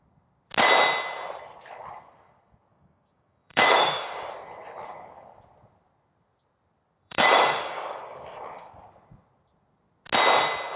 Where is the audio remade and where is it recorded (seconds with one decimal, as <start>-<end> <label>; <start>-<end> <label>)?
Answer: 0.0-2.7 recorded; 2.7-4.3 remade; 4.3-7.0 recorded; 7.0-8.8 remade; 8.8-10.8 recorded